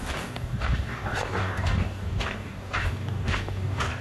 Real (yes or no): no